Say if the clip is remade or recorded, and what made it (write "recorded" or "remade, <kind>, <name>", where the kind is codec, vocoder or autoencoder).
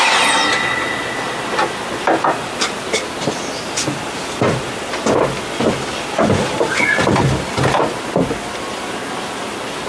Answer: recorded